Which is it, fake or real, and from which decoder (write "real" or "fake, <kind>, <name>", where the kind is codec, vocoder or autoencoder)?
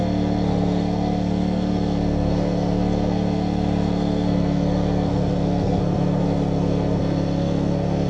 fake, codec, SNAC